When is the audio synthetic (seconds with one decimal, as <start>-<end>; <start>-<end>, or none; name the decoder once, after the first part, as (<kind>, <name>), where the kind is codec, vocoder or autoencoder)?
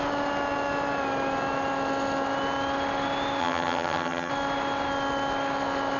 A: 3.4-4.3 (vocoder, HiFi-GAN)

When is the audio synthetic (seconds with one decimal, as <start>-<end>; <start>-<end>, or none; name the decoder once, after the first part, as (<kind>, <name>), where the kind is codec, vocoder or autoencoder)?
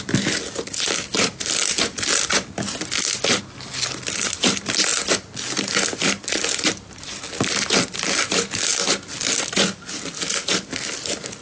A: none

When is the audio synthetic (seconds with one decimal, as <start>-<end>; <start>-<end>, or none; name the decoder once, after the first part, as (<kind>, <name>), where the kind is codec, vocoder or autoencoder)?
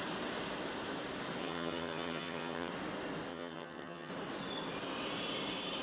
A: 1.4-2.7 (vocoder, HiFi-GAN); 3.3-4.1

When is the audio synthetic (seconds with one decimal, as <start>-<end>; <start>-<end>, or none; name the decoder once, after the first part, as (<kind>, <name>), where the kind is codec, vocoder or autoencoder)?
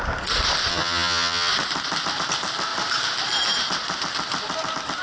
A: 0.7-1.5 (vocoder, HiFi-GAN)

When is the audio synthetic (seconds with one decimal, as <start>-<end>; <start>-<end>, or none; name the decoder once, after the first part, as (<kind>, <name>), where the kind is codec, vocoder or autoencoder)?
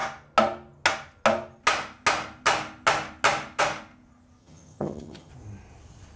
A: 4.4-5.3 (vocoder, HiFi-GAN)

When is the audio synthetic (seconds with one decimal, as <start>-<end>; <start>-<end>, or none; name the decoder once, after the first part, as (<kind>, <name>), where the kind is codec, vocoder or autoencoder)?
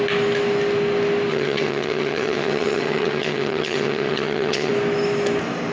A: 1.3-4.7 (vocoder, HiFi-GAN)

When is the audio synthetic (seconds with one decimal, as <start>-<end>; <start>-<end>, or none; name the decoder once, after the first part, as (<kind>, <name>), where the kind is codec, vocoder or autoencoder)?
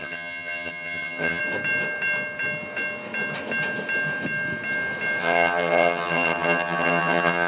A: 0.0-1.4 (vocoder, HiFi-GAN); 5.2-7.5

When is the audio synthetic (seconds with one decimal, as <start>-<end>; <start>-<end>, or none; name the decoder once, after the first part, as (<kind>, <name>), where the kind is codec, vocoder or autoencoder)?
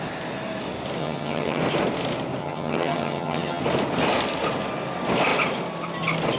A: 1.0-1.6 (vocoder, HiFi-GAN); 2.4-3.6